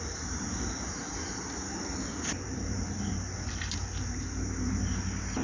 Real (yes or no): no